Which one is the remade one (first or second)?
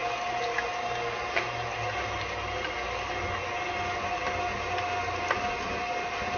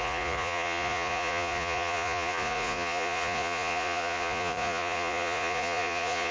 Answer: second